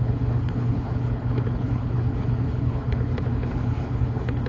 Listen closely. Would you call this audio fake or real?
fake